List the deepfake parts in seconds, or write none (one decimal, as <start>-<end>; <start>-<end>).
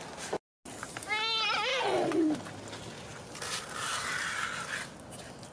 none